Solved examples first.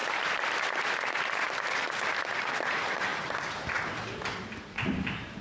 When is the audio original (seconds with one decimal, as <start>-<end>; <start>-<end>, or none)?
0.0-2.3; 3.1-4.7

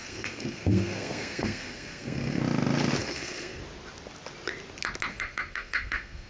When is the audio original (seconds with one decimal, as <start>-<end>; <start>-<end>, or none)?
2.4-3.0; 3.6-5.1

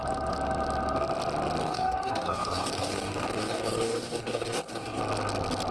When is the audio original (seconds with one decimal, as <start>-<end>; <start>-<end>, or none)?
0.0-1.6; 5.0-5.7